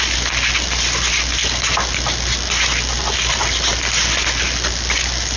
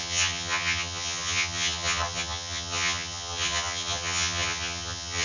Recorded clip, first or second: first